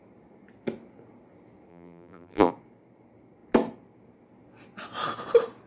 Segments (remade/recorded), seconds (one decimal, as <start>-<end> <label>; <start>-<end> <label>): 0.0-1.7 recorded; 1.7-2.5 remade; 2.5-5.7 recorded